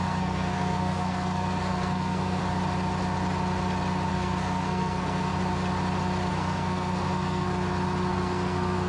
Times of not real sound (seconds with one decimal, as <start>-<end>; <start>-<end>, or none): 0.0-2.4; 4.1-5.3; 6.3-7.5; 8.1-8.9